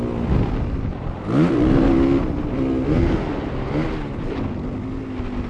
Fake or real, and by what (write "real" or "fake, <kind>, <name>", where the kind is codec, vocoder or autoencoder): real